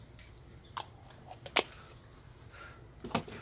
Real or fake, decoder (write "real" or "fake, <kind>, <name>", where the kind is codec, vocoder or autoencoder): real